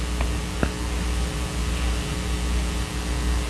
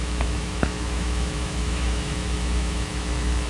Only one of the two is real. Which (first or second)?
first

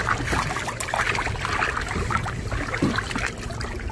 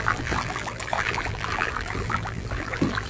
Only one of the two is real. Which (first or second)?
first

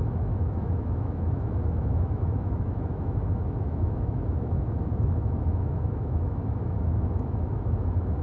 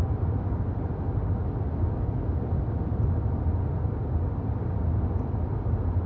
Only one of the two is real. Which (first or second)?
second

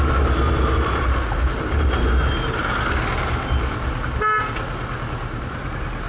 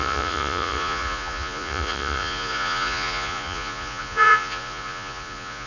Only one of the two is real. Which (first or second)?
first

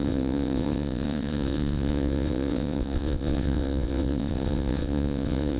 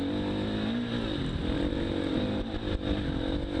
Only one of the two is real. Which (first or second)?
second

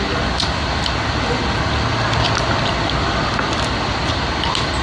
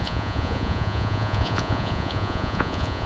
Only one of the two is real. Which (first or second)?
first